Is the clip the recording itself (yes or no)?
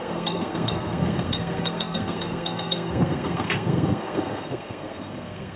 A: no